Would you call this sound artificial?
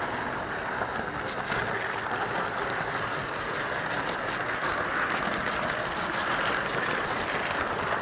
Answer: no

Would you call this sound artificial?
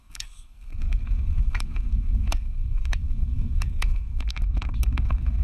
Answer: yes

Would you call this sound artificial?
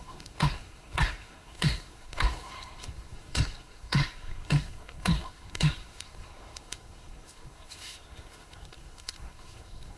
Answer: yes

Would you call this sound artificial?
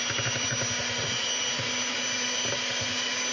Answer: no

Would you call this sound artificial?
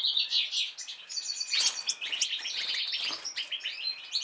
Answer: no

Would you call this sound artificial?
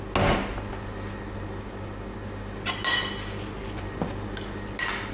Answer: no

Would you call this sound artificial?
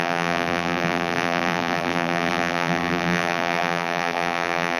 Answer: yes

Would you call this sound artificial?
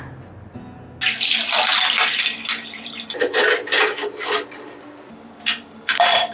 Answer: no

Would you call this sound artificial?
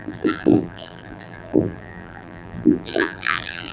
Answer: yes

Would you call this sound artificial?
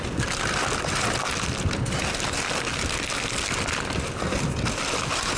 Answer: no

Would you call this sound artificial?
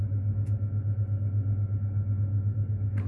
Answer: no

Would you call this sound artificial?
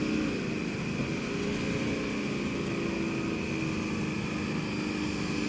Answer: no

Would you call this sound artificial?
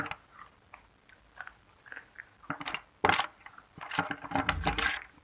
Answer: no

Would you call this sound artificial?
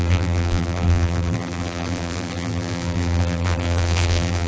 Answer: yes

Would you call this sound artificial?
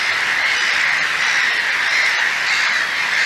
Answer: no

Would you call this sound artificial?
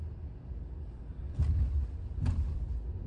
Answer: no